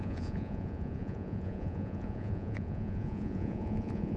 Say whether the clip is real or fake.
fake